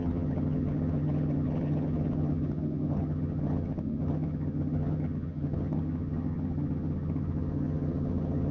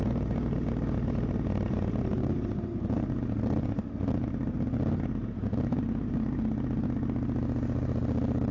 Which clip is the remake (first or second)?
first